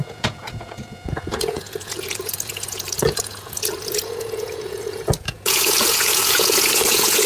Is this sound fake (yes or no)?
yes